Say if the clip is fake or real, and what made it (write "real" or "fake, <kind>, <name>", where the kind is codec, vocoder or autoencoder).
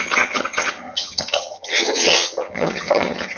fake, vocoder, HiFi-GAN